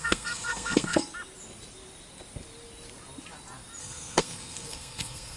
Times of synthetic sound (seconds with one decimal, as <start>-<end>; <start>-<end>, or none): 0.0-1.0; 3.8-5.4